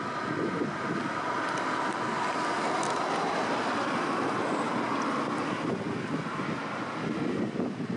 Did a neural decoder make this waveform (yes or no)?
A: no